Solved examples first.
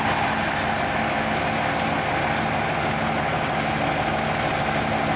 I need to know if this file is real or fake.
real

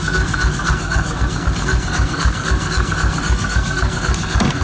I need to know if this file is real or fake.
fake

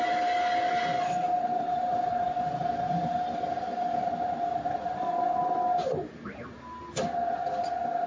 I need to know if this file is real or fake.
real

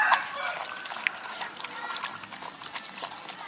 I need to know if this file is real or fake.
real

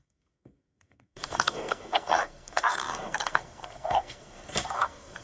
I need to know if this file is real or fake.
fake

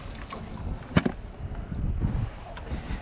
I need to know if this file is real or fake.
real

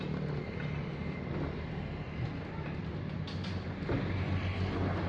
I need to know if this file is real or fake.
real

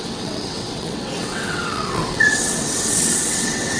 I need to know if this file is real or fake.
fake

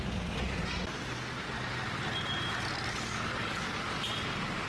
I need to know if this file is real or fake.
real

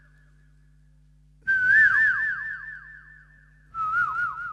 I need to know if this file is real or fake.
real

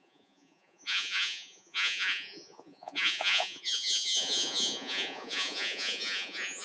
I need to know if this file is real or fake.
fake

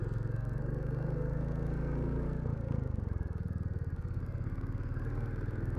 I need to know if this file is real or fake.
fake